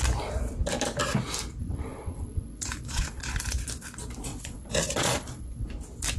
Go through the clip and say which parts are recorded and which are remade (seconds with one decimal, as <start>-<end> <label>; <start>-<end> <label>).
0.0-1.6 recorded; 1.6-3.3 remade; 3.3-4.3 recorded; 4.3-5.7 remade; 5.7-6.2 recorded